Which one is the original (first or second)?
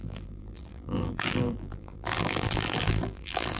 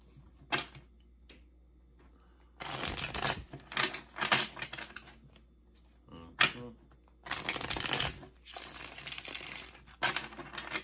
second